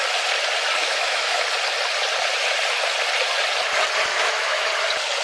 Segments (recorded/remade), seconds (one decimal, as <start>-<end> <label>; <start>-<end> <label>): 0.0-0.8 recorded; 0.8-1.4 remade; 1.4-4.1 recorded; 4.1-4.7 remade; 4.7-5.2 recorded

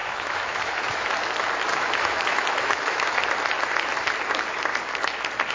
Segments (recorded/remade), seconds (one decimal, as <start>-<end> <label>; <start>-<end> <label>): 0.0-1.1 remade; 1.1-1.7 recorded; 1.7-3.2 remade; 3.2-5.5 recorded

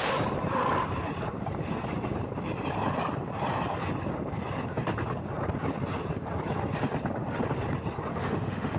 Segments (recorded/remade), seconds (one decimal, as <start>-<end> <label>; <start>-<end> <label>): 0.0-8.1 recorded; 8.1-8.8 remade

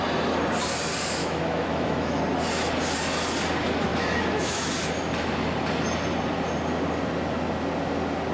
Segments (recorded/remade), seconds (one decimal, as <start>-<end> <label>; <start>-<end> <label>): 0.0-1.2 recorded; 1.2-2.2 remade; 2.2-3.9 recorded; 3.9-4.7 remade; 4.7-8.3 recorded

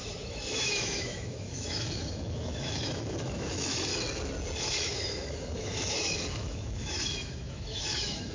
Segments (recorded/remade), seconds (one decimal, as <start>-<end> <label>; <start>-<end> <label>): 0.0-3.9 remade; 3.9-4.6 recorded; 4.6-8.3 remade